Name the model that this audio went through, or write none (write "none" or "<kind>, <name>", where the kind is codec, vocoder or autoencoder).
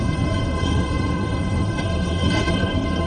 codec, SNAC